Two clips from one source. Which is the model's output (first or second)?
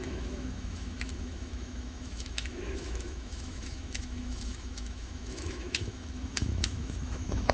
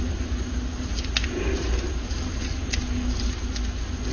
first